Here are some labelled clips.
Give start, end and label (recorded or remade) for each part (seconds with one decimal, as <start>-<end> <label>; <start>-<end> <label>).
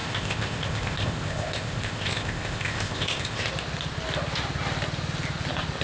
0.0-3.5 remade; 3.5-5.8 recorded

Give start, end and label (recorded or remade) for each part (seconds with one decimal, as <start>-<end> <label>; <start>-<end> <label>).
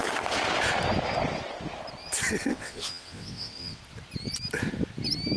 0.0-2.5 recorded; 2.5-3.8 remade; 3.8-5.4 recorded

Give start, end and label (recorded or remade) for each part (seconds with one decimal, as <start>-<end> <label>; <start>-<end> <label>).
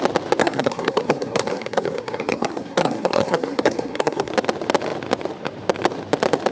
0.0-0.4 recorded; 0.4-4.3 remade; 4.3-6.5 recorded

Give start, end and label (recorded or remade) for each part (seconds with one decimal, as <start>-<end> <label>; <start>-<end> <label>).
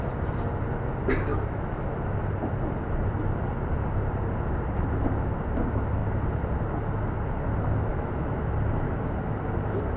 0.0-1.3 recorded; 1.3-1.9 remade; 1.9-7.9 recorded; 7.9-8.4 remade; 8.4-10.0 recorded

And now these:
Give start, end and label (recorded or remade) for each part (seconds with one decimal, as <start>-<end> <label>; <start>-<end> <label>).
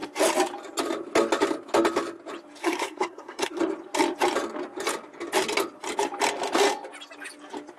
0.0-2.6 recorded; 2.6-3.6 remade; 3.6-7.8 recorded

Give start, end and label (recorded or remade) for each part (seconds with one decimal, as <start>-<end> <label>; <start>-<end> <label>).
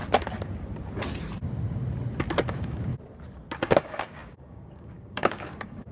0.0-2.5 recorded; 2.5-2.9 remade; 2.9-3.6 recorded; 3.6-5.9 remade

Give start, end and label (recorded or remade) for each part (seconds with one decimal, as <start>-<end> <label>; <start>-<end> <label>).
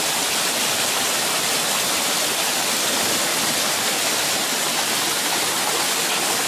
0.0-6.5 recorded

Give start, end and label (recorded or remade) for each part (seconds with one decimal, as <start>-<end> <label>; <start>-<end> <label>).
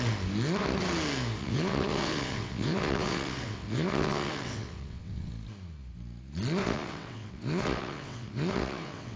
0.0-1.4 recorded; 1.4-5.3 remade; 5.3-6.6 recorded; 6.6-9.2 remade